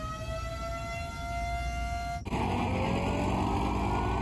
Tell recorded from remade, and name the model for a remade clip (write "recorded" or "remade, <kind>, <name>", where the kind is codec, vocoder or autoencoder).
recorded